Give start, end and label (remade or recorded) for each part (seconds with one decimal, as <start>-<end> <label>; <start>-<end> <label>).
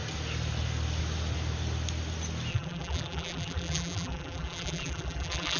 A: 0.0-2.5 recorded; 2.5-5.6 remade